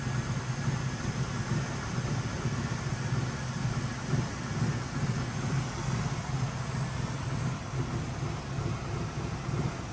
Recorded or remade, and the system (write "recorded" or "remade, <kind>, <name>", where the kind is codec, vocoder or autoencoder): recorded